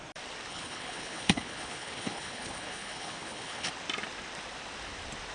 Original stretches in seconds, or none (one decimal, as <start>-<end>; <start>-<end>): 0.0-0.5; 3.7-5.3